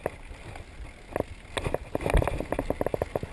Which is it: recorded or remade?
recorded